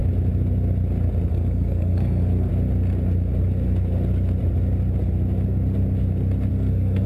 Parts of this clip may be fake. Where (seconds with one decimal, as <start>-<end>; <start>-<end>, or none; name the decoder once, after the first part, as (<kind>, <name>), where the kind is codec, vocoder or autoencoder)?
1.3-2.5 (codec, SNAC); 6.5-7.1